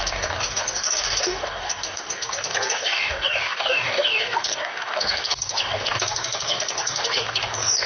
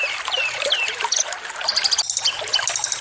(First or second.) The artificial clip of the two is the first